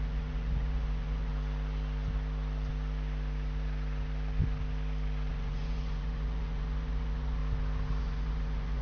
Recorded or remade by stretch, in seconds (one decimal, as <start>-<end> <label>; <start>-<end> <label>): 0.0-1.3 remade; 1.3-5.3 recorded; 5.3-7.4 remade; 7.4-8.0 recorded; 8.0-8.8 remade